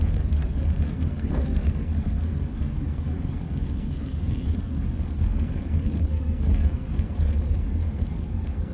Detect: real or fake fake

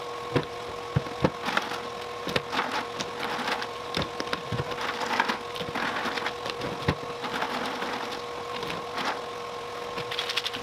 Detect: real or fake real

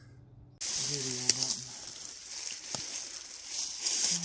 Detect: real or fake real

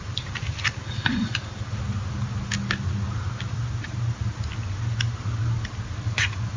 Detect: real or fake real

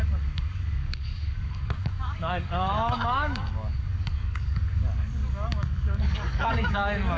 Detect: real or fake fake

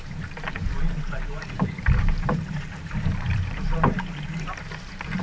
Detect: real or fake fake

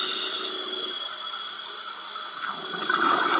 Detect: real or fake real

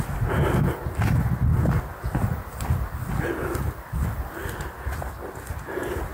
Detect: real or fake real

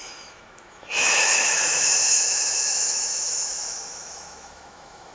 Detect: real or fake fake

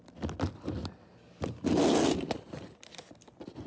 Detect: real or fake real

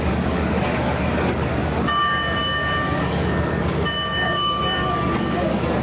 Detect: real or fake fake